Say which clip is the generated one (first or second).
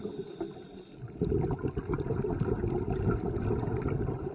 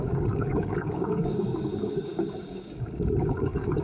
second